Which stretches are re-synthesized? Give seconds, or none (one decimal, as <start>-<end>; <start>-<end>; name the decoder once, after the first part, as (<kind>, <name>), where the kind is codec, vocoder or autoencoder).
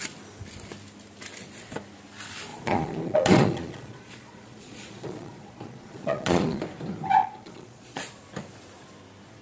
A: 2.5-6.6 (vocoder, Vocos); 7.2-8.1